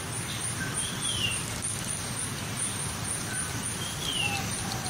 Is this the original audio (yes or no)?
yes